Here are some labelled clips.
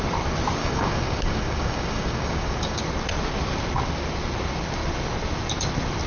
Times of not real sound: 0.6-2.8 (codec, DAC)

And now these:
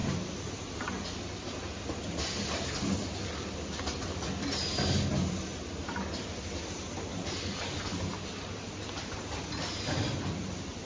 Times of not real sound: none

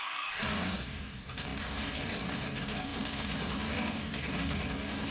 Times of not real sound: 0.0-5.1 (codec, DAC)

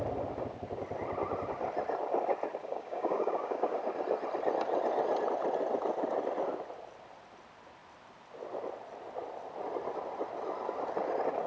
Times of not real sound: 2.6-3.8 (codec, DAC)

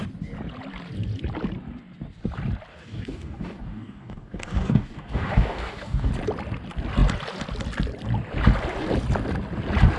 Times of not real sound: 2.7-6.1 (codec, DAC)